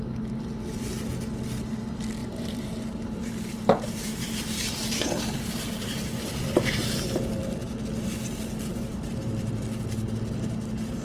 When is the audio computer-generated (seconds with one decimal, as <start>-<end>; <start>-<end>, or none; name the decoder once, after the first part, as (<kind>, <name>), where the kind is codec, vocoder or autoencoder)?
2.2-6.9 (vocoder, BigVGAN v2); 8.7-9.3